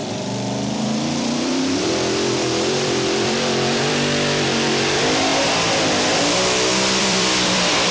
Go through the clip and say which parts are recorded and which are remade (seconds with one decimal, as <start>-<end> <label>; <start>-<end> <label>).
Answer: 0.0-5.3 remade; 5.3-7.0 recorded; 7.0-7.9 remade